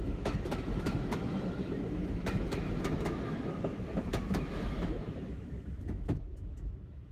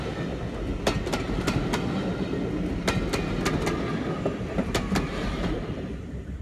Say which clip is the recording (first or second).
second